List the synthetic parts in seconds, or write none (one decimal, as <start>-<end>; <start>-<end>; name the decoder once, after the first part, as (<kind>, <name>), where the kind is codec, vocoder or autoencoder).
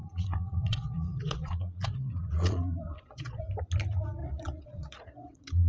0.0-3.4 (vocoder, Vocos); 4.2-5.7